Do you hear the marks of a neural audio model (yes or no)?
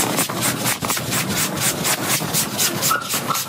no